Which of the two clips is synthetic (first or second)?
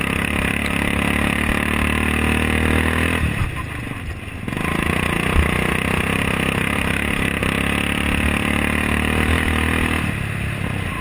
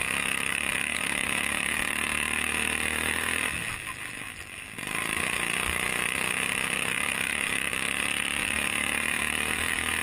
second